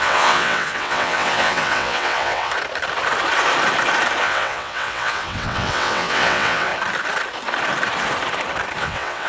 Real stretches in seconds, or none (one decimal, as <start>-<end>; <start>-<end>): 2.5-4.2; 6.7-8.8